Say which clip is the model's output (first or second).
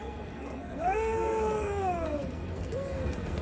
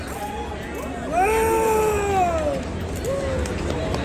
first